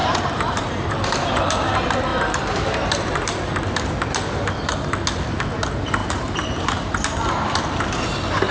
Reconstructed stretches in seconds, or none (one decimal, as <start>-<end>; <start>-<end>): 0.0-1.7; 2.1-3.5; 6.0-7.2